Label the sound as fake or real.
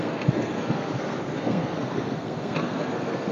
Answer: fake